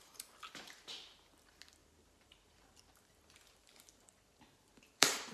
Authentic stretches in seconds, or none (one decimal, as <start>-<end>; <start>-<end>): 0.0-1.8